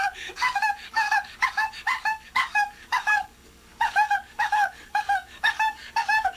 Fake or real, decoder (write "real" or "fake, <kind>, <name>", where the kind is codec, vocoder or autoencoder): fake, codec, DAC